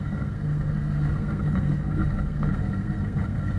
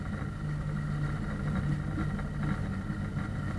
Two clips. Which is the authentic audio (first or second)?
second